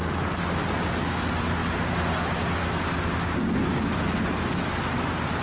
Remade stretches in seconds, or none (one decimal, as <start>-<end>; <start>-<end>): none